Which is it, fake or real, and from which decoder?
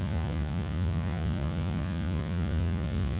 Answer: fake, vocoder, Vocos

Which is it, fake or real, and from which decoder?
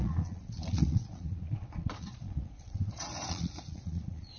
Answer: fake, vocoder, Vocos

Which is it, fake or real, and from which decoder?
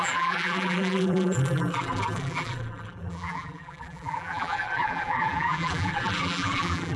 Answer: fake, vocoder, BigVGAN v2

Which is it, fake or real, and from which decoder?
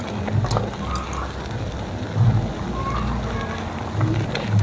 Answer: real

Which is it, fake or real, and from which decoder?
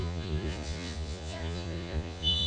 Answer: fake, vocoder, Vocos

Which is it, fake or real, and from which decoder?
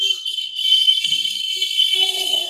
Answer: fake, codec, SNAC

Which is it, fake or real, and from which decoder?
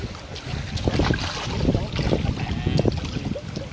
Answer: real